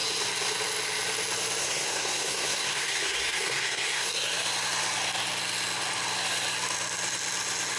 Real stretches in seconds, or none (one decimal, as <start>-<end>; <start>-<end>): 0.0-1.6; 4.1-7.8